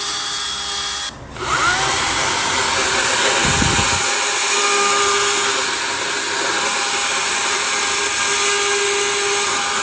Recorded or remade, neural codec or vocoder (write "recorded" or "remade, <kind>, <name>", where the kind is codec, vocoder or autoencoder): recorded